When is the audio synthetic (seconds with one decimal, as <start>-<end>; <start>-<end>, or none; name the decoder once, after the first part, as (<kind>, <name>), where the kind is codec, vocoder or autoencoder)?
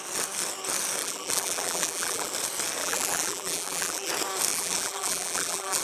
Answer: 1.0-2.3 (vocoder, BigVGAN v2); 2.8-4.1; 4.5-5.8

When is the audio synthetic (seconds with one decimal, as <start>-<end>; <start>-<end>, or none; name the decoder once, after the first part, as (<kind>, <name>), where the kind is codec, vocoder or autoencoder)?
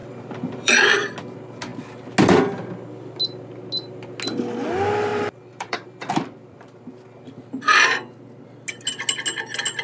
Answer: 0.0-0.7 (vocoder, BigVGAN v2); 5.1-6.8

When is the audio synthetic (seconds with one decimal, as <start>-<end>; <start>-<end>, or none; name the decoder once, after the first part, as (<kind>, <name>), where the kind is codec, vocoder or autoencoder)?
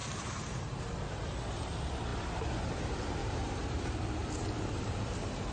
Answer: 0.0-0.8 (vocoder, BigVGAN v2); 3.2-3.8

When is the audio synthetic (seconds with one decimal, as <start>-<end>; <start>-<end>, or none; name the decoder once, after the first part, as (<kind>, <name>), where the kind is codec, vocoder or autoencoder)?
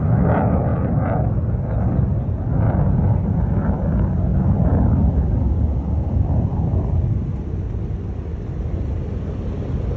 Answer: 4.3-7.5 (vocoder, BigVGAN v2); 8.3-8.9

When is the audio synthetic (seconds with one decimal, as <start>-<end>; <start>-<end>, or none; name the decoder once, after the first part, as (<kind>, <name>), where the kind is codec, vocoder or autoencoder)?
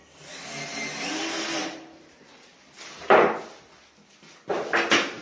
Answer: 0.0-3.1 (vocoder, BigVGAN v2)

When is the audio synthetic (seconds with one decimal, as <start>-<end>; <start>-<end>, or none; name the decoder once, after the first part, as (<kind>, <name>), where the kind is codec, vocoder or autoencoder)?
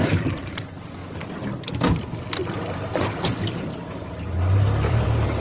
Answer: 0.0-1.0 (vocoder, BigVGAN v2); 2.0-5.4